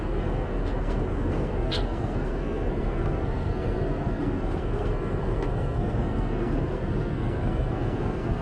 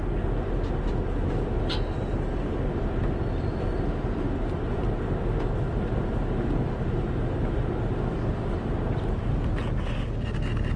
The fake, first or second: first